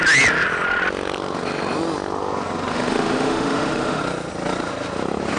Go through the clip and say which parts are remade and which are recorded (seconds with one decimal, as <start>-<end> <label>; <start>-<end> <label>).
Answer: 0.0-2.7 recorded; 2.7-4.0 remade; 4.0-5.4 recorded